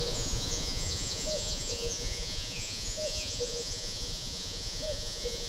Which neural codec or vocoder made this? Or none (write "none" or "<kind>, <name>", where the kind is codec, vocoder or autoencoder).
vocoder, Vocos